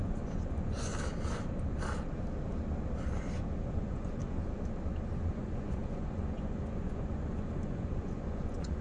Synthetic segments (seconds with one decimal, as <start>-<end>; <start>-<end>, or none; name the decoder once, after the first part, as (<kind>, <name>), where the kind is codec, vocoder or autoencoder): 0.0-0.9 (vocoder, Vocos); 3.6-4.4; 5.2-8.8